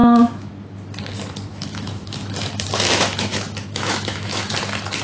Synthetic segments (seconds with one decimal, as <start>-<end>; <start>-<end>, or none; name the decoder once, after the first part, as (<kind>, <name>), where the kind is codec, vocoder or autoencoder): 0.0-0.5 (autoencoder, DAC-VAE); 1.5-4.5